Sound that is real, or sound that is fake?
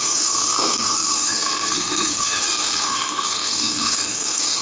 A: fake